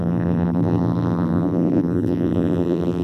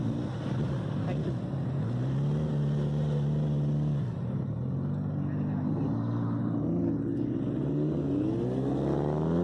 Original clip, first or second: second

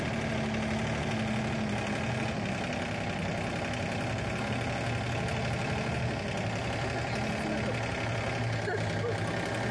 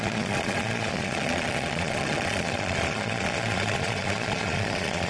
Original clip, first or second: first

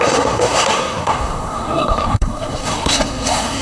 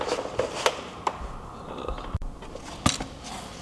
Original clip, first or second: second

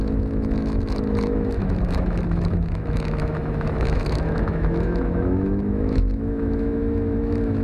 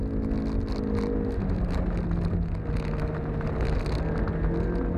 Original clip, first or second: second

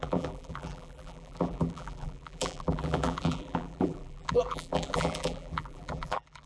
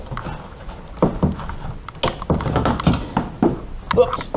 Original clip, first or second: second